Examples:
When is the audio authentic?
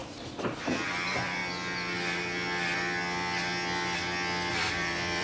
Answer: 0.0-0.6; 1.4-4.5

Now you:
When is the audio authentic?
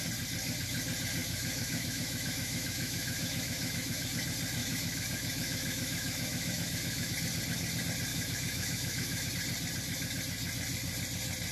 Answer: 0.0-1.2; 4.1-4.6; 7.1-8.1; 9.3-11.5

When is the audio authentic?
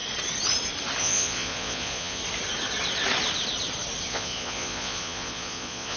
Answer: 0.0-1.0; 2.2-4.1